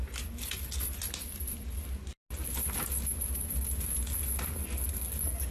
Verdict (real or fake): real